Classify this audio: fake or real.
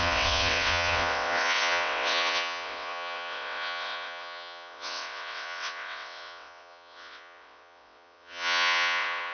fake